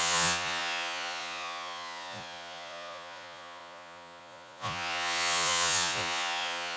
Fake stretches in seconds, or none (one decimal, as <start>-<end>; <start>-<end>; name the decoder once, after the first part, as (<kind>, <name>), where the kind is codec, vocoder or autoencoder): 0.0-6.8 (vocoder, Vocos)